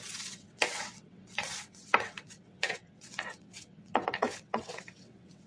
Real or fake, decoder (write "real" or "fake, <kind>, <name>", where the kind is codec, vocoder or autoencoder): fake, vocoder, WaveNeXt